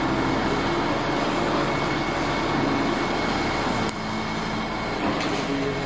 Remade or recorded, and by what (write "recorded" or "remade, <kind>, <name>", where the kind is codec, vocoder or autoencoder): recorded